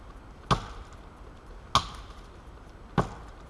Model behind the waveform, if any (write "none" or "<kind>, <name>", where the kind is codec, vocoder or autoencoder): none